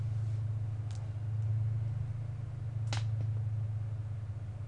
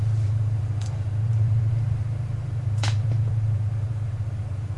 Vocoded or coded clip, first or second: second